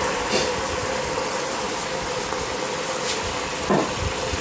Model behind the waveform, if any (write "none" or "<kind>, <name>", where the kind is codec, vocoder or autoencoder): vocoder, BigVGAN v2